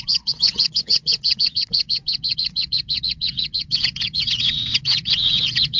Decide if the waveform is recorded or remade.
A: remade